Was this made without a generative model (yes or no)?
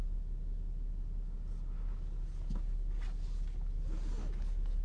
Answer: yes